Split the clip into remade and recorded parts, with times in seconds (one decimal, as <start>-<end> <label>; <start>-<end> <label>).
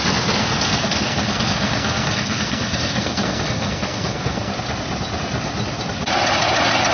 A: 0.0-0.4 recorded; 0.4-4.5 remade; 4.5-6.9 recorded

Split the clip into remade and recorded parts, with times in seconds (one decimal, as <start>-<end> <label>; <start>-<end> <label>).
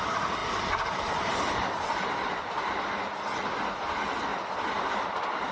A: 0.0-5.5 recorded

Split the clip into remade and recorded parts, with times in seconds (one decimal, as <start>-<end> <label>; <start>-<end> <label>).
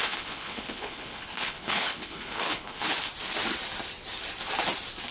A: 0.0-3.1 remade; 3.1-5.1 recorded